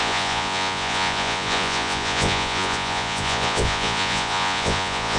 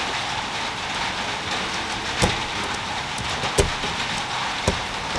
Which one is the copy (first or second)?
first